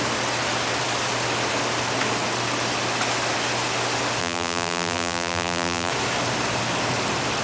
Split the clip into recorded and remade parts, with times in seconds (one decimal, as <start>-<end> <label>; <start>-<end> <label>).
0.0-4.2 recorded; 4.2-5.9 remade; 5.9-7.4 recorded